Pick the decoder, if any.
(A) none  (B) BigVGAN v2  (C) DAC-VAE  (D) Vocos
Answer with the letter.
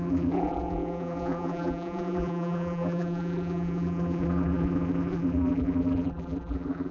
B